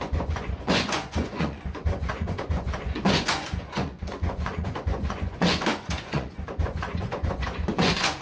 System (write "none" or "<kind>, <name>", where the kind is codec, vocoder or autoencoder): vocoder, Vocos